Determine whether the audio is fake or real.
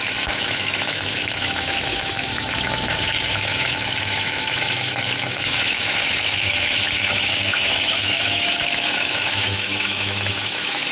fake